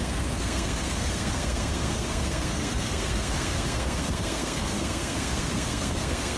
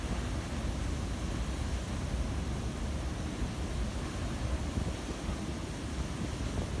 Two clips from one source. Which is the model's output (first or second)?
first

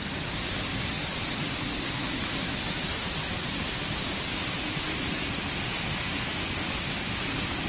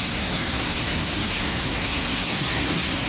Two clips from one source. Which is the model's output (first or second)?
second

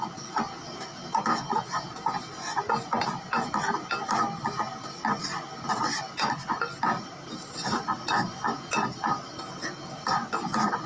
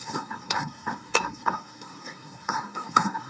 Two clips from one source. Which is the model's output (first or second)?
second